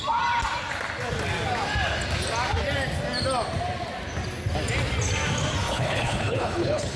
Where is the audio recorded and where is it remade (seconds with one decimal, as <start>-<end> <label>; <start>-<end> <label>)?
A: 0.0-5.6 recorded; 5.6-7.0 remade